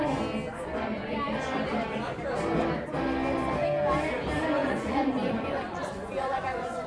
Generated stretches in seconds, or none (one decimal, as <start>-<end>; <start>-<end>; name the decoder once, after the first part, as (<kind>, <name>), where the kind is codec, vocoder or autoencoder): 4.6-6.9 (vocoder, Vocos)